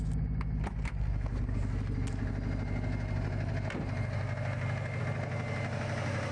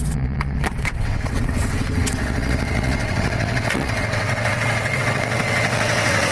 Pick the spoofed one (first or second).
second